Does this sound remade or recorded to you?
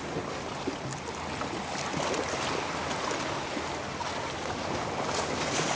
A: recorded